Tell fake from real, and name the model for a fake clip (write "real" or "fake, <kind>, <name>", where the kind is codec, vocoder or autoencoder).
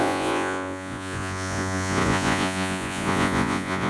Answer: fake, vocoder, Vocos